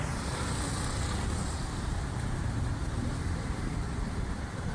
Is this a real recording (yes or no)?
yes